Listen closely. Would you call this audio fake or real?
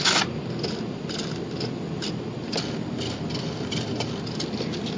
real